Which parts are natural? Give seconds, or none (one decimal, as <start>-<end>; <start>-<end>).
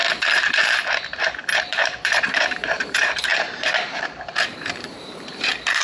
0.0-1.6